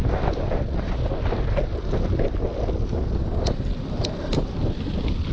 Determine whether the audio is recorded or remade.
recorded